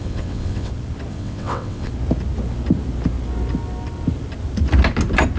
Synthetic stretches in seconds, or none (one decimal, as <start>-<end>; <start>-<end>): 0.0-0.7; 1.1-1.9